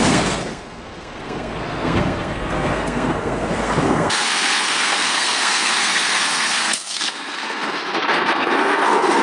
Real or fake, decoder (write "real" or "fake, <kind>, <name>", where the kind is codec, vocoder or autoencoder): fake, codec, SNAC